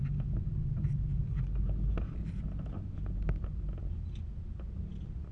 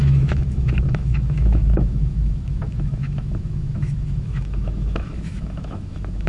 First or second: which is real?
first